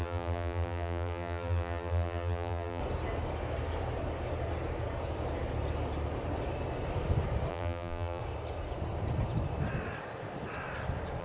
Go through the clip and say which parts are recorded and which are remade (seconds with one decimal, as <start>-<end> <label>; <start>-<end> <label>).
0.0-2.8 remade; 2.8-7.5 recorded; 7.5-8.2 remade; 8.2-11.2 recorded